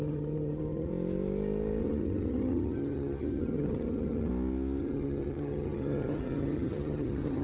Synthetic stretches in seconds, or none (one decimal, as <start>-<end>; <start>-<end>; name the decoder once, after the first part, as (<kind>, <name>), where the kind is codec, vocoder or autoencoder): 0.0-0.9 (vocoder, HiFi-GAN); 1.8-4.3; 4.8-7.4